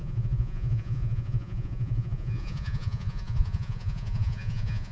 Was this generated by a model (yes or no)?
yes